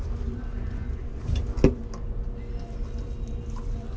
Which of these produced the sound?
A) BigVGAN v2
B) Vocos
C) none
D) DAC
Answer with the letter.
C